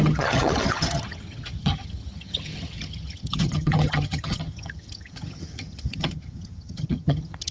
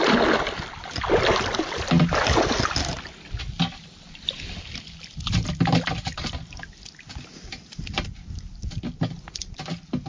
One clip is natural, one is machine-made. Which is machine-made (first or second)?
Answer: first